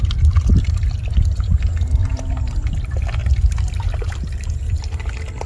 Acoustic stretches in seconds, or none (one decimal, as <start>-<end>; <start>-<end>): 0.0-2.0; 2.8-3.2; 4.7-5.5